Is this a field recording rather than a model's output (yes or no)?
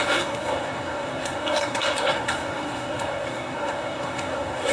no